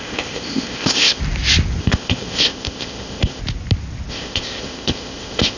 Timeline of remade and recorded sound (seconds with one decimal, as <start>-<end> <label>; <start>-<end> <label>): 0.0-1.2 remade; 1.2-1.8 recorded; 1.8-3.4 remade; 3.4-4.1 recorded; 4.1-5.6 remade